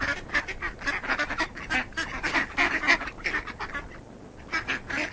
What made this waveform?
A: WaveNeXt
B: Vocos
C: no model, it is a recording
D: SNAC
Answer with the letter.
C